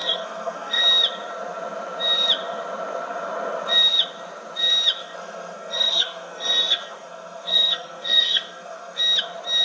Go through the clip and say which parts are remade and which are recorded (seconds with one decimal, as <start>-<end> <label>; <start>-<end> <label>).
0.0-0.8 remade; 0.8-5.0 recorded; 5.0-9.0 remade; 9.0-9.6 recorded